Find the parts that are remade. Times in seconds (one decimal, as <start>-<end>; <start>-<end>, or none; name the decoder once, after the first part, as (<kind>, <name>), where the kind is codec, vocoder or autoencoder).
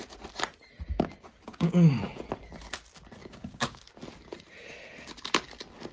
1.5-2.2 (codec, DAC); 3.2-3.8